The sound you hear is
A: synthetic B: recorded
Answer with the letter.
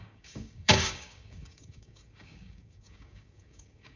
A